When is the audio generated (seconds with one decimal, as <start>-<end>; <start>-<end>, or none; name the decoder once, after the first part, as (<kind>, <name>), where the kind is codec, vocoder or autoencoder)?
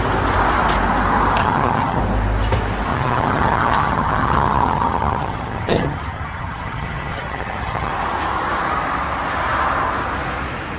1.4-2.0 (vocoder, HiFi-GAN); 2.9-7.9